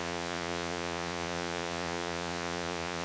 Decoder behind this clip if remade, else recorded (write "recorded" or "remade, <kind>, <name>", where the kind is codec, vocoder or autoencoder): remade, vocoder, Vocos